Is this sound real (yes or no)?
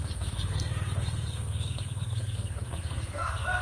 no